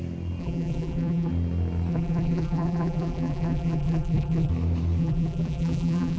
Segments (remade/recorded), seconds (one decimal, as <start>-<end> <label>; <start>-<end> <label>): 0.0-0.4 recorded; 0.4-1.3 remade; 1.3-1.9 recorded; 1.9-4.5 remade; 4.5-5.0 recorded; 5.0-6.2 remade